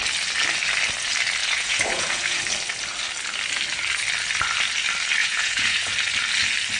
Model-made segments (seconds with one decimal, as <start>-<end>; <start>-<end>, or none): 1.4-2.4; 5.2-5.9